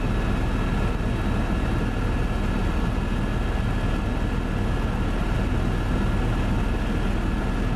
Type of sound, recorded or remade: recorded